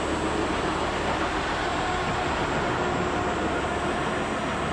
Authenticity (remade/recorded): recorded